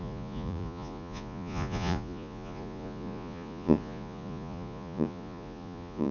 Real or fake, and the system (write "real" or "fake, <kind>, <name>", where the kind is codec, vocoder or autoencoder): fake, vocoder, Vocos